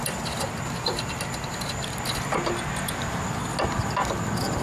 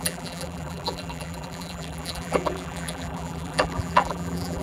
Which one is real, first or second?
first